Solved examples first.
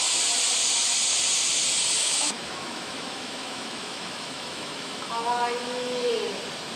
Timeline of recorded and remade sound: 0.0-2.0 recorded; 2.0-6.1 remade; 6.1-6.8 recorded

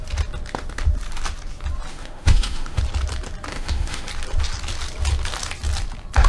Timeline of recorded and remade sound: 0.0-1.9 recorded; 1.9-2.8 remade; 2.8-3.5 recorded; 3.5-4.1 remade; 4.1-6.3 recorded

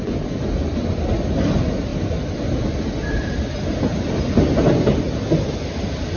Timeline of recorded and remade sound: 0.0-6.2 recorded